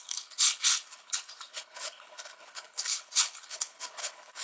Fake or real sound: fake